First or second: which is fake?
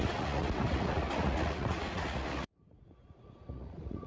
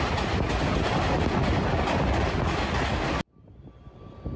first